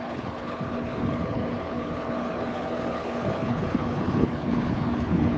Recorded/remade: remade